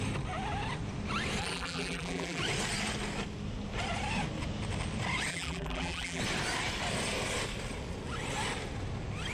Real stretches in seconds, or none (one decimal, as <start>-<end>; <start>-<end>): 0.0-1.4; 2.4-5.3; 6.2-9.3